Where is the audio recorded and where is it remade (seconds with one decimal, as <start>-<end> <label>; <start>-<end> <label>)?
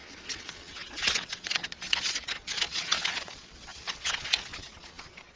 0.0-5.4 remade